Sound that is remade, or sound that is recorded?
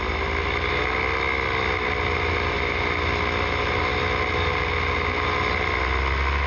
recorded